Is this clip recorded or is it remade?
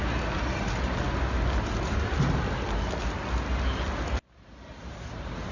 recorded